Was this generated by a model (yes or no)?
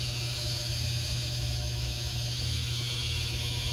yes